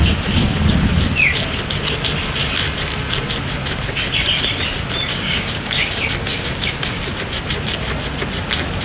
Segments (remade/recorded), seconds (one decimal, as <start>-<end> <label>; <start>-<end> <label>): 0.0-5.1 recorded; 5.1-7.1 remade; 7.1-8.8 recorded